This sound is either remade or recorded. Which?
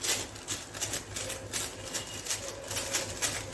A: recorded